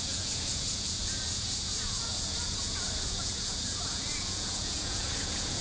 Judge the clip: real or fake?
fake